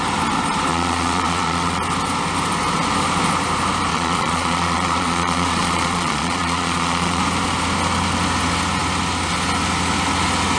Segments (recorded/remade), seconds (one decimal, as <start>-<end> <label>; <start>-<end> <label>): 0.0-0.7 recorded; 0.7-1.8 remade; 1.8-3.9 recorded; 3.9-7.2 remade; 7.2-10.6 recorded

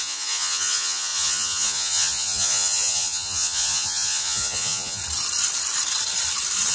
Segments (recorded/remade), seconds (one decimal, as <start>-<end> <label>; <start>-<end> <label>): 0.0-5.0 remade; 5.0-6.7 recorded

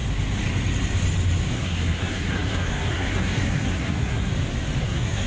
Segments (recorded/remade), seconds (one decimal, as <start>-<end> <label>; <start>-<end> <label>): 0.0-1.5 recorded; 1.5-4.3 remade; 4.3-4.8 recorded; 4.8-5.3 remade

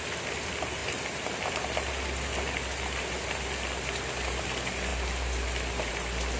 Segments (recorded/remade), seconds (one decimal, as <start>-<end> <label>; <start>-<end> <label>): 0.0-4.9 remade; 4.9-5.9 recorded; 5.9-6.4 remade

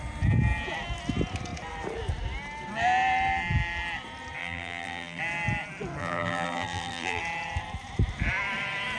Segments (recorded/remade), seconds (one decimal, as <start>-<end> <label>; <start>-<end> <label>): 0.0-4.4 recorded; 4.4-5.2 remade; 5.2-6.0 recorded; 6.0-7.2 remade; 7.2-9.0 recorded